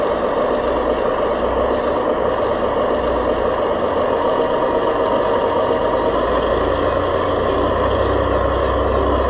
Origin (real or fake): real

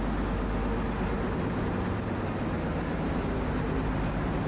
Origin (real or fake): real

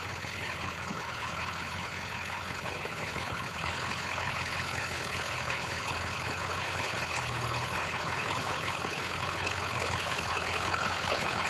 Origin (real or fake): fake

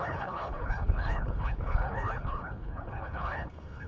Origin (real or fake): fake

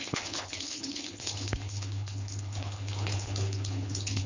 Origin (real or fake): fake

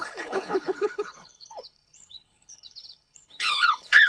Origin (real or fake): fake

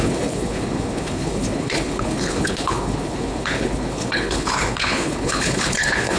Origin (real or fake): fake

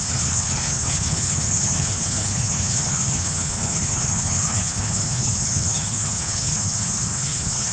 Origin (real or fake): fake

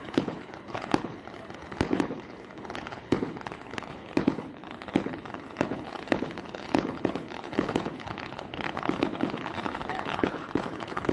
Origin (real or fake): fake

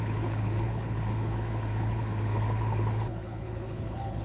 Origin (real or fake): fake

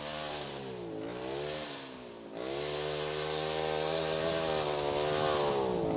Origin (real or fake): real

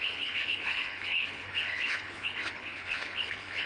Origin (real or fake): fake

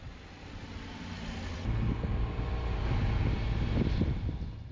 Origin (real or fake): real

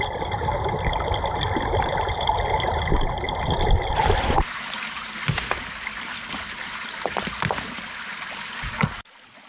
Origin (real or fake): real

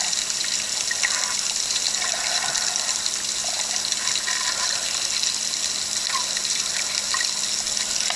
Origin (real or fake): real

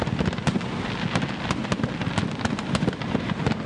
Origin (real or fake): real